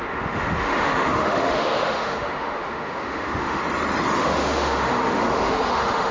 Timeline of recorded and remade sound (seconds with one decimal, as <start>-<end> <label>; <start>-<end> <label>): 0.0-3.6 remade; 3.6-4.2 recorded; 4.2-6.1 remade